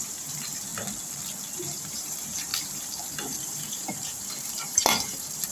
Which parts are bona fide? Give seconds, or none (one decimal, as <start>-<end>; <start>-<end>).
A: 0.7-1.5